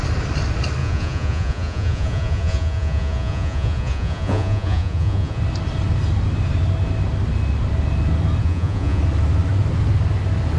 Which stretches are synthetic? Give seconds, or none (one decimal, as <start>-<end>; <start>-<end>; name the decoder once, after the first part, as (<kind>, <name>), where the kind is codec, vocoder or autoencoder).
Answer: 0.8-5.4 (vocoder, Vocos); 8.4-9.0